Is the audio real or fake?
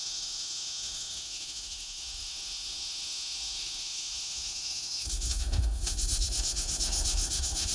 fake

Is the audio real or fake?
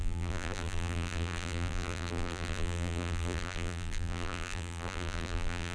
fake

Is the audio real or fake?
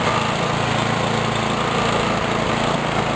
real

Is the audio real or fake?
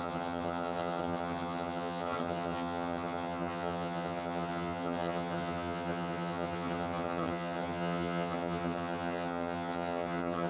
fake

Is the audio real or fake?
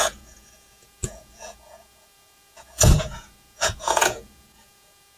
fake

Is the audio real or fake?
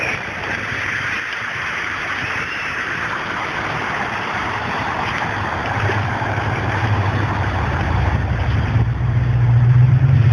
fake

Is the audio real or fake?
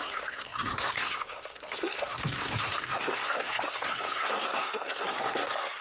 fake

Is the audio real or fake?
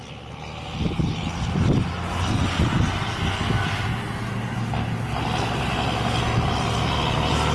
real